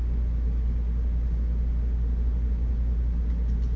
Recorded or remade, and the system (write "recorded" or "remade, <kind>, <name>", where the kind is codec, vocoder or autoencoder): recorded